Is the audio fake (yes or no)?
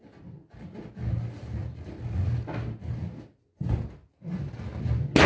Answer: no